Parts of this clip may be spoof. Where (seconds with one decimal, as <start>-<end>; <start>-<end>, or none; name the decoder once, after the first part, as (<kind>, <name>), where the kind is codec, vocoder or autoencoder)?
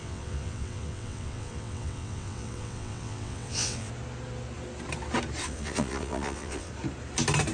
0.0-3.9 (vocoder, WaveNeXt); 5.4-6.7